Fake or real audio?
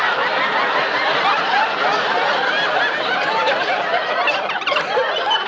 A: real